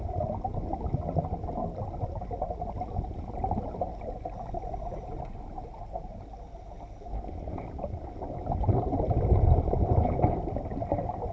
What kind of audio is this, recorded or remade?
recorded